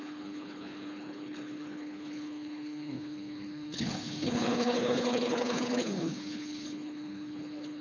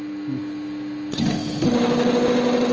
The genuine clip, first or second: second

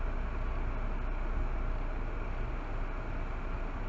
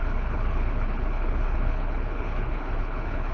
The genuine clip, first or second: first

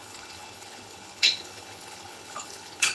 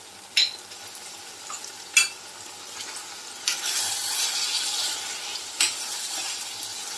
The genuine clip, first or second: second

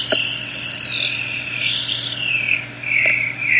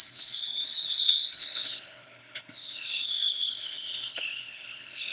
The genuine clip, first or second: first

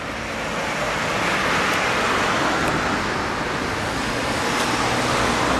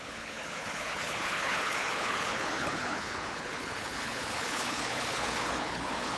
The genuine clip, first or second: first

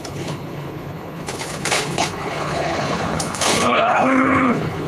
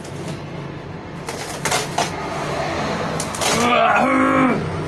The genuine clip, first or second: second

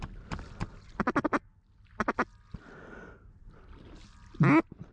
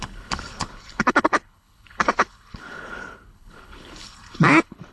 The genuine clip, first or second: first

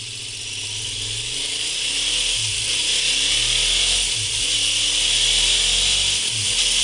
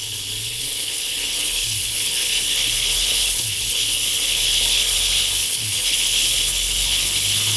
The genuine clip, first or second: first